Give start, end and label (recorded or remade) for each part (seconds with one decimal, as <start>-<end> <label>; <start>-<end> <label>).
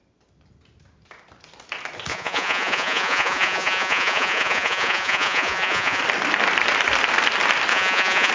0.0-2.1 recorded; 2.1-6.0 remade; 6.0-7.7 recorded; 7.7-8.3 remade